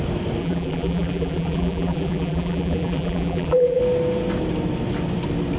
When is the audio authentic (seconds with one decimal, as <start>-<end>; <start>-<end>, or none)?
0.0-0.4; 3.8-5.6